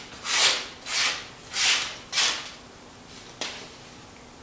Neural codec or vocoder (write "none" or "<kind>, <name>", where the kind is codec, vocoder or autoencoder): none